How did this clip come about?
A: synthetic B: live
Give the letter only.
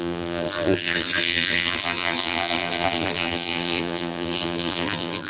A